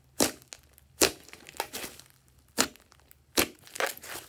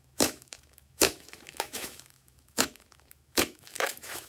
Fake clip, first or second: second